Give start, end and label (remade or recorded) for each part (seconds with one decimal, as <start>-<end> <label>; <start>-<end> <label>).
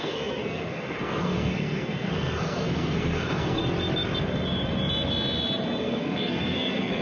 0.0-3.6 remade; 3.6-5.8 recorded; 5.8-7.0 remade